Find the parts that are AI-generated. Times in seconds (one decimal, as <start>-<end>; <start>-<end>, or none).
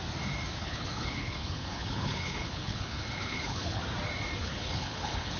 0.6-3.8; 4.4-5.4